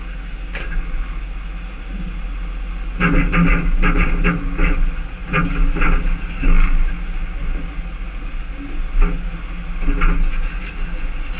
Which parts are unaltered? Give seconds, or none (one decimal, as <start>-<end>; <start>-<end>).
0.0-11.4

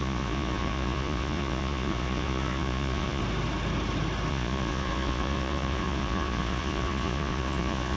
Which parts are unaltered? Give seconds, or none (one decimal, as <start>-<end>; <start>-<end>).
3.2-4.3

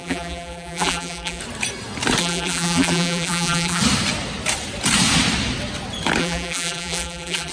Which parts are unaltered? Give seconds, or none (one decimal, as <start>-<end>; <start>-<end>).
1.4-2.2; 3.8-6.2